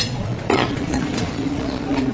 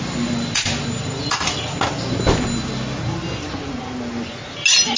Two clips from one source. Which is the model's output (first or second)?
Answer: first